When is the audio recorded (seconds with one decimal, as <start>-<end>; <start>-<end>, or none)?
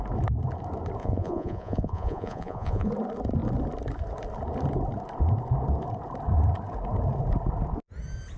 0.0-1.0; 2.9-8.4